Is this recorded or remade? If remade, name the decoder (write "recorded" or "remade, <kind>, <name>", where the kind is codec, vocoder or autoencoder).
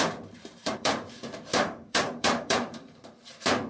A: remade, vocoder, BigVGAN v2